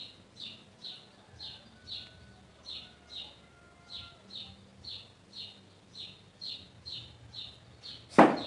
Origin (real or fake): real